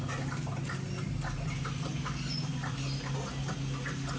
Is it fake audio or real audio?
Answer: real